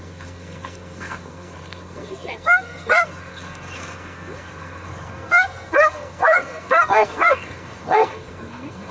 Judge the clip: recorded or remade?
remade